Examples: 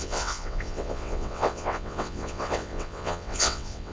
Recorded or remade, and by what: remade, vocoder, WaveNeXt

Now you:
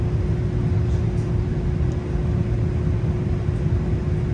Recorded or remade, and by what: recorded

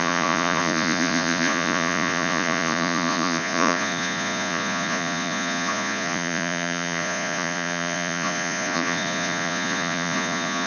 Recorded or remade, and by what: remade, vocoder, Vocos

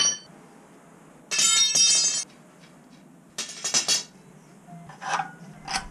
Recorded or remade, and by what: recorded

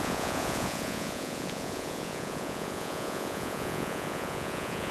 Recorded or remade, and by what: remade, vocoder, Vocos